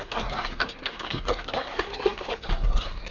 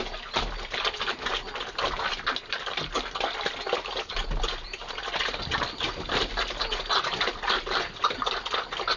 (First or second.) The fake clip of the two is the first